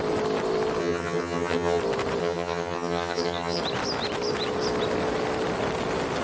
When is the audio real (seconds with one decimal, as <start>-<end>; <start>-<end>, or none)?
0.0-0.8; 1.8-2.2; 3.6-6.2